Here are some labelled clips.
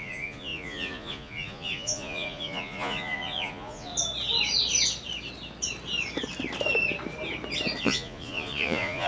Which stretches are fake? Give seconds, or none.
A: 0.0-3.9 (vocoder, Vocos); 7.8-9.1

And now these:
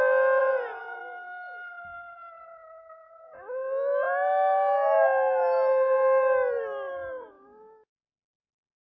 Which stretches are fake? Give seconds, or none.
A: 0.4-1.0 (vocoder, Vocos)

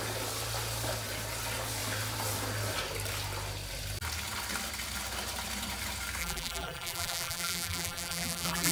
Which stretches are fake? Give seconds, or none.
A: 6.2-8.7 (vocoder, BigVGAN v2)

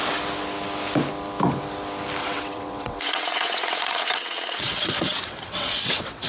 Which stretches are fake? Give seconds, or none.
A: 2.2-6.3 (vocoder, WaveNeXt)

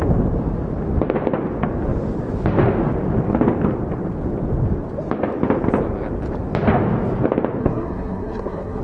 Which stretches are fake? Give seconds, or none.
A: 7.6-8.8 (codec, SNAC)